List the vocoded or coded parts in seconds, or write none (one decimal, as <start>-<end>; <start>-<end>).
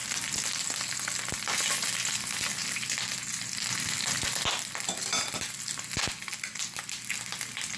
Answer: none